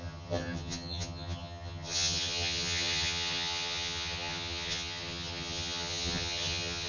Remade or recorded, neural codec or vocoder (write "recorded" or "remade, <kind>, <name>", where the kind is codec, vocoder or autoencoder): remade, vocoder, HiFi-GAN